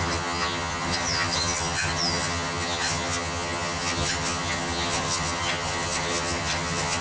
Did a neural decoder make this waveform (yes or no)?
yes